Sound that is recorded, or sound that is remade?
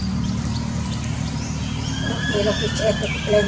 recorded